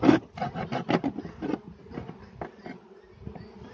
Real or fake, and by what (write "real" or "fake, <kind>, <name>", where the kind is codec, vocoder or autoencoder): real